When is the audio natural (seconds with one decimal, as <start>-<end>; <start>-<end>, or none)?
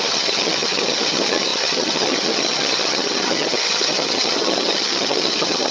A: none